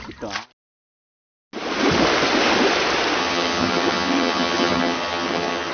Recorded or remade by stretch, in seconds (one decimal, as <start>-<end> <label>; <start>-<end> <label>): 0.0-3.2 recorded; 3.2-5.7 remade